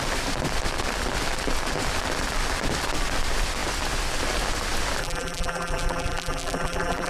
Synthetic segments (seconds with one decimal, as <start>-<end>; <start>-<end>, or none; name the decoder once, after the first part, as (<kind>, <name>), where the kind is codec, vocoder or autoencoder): 5.0-7.1 (vocoder, BigVGAN v2)

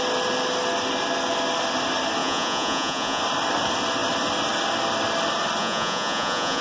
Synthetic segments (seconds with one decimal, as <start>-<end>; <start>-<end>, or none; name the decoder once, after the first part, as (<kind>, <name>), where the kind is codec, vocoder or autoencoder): 2.2-3.2 (vocoder, Vocos); 5.6-6.6

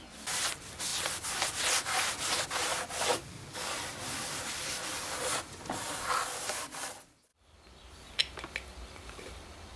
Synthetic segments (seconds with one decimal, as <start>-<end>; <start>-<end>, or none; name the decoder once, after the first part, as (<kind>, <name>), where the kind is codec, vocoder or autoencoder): 3.1-3.7 (codec, DAC)

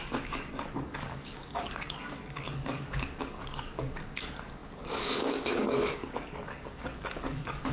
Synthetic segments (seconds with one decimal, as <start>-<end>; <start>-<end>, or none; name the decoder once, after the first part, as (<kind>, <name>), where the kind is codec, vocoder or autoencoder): 0.0-7.7 (codec, DAC)

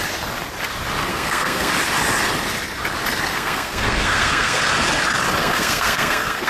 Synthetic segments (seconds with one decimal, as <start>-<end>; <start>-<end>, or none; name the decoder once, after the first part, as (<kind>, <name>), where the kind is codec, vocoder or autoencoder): 1.1-1.7 (codec, SNAC); 3.3-4.6; 5.4-6.5